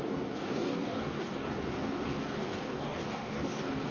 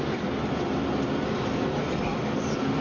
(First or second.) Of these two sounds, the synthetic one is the first